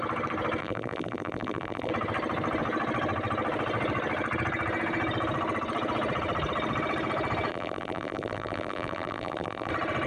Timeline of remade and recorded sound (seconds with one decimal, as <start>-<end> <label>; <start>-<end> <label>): 0.0-0.6 recorded; 0.6-1.9 remade; 1.9-7.5 recorded; 7.5-9.7 remade; 9.7-10.1 recorded